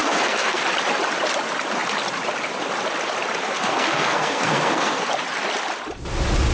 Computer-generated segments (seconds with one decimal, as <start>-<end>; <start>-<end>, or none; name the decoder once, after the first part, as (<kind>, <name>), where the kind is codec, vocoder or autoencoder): 0.0-0.6 (codec, SNAC); 3.4-5.1